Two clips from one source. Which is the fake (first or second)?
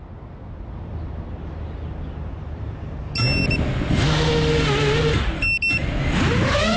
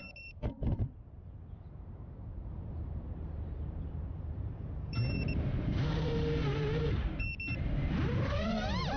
second